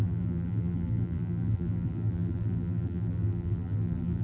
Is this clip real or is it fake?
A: fake